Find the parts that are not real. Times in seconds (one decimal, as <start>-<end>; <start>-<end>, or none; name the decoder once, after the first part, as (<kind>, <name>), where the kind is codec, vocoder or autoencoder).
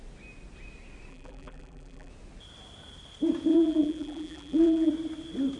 1.1-2.1 (vocoder, BigVGAN v2); 3.5-4.9